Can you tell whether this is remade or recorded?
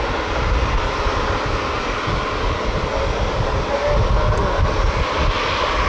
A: recorded